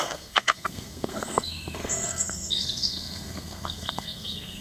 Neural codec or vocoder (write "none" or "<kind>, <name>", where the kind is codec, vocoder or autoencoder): codec, SNAC